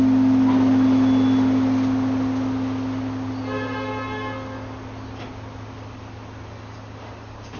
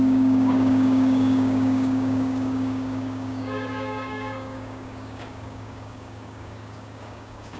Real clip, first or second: first